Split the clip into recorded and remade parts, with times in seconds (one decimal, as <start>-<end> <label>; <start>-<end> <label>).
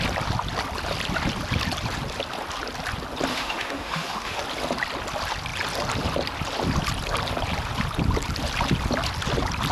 0.0-3.3 recorded; 3.3-4.4 remade; 4.4-9.7 recorded